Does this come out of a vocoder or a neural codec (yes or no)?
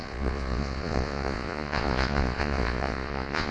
yes